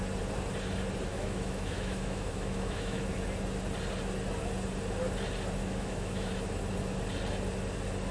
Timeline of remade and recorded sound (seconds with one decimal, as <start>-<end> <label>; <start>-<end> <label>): 0.0-1.1 recorded; 1.1-3.1 remade; 3.1-5.6 recorded; 5.6-6.3 remade; 6.3-8.1 recorded